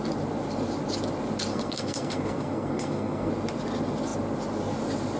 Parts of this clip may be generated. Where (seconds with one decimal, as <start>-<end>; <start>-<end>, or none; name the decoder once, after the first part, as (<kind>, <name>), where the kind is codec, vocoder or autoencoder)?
1.5-3.3 (codec, SNAC)